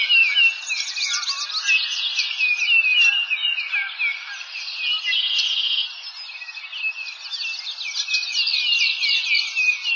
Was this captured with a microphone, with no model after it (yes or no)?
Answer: yes